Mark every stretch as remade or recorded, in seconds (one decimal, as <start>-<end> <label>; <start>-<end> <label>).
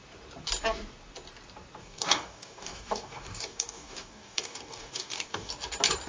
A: 0.0-1.8 recorded; 1.8-5.5 remade; 5.5-6.1 recorded